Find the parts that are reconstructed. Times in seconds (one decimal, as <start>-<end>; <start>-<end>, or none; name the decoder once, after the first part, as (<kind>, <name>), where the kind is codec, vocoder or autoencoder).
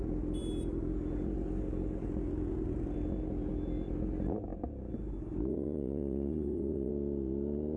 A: 5.5-6.9 (vocoder, WaveNeXt)